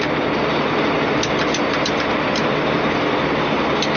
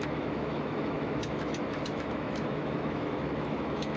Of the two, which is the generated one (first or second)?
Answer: second